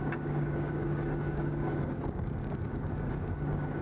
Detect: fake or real fake